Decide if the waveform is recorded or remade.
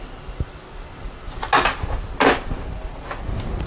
recorded